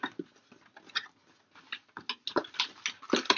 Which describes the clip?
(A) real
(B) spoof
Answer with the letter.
A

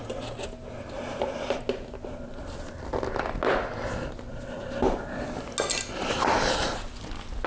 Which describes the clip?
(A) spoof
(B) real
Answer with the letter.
B